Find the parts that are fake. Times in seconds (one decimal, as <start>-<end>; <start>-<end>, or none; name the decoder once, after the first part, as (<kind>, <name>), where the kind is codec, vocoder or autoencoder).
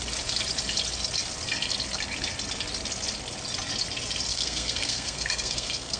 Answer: 4.3-6.0 (codec, SNAC)